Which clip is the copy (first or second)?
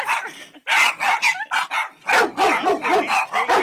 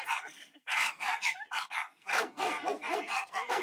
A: second